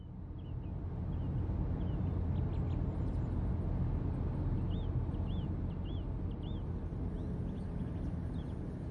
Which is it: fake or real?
real